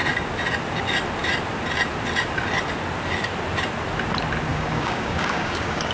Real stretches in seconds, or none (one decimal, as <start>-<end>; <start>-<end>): 0.0-4.5